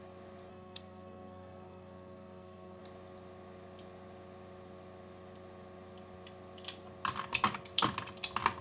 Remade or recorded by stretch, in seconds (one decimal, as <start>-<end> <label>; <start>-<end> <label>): 0.0-0.5 recorded; 0.5-2.8 remade; 2.8-8.6 recorded